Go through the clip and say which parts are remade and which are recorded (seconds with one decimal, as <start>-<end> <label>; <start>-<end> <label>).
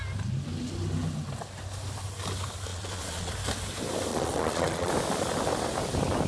0.0-2.7 recorded; 2.7-3.3 remade; 3.3-4.1 recorded; 4.1-4.9 remade; 4.9-6.3 recorded